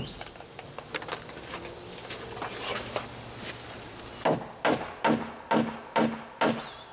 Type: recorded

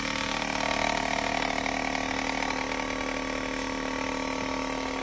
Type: recorded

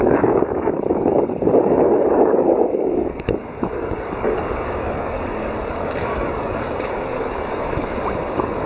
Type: remade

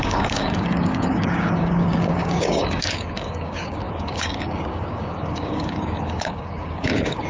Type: remade